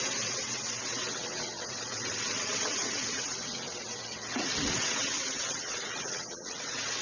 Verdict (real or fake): fake